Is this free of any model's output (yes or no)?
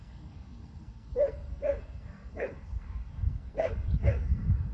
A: no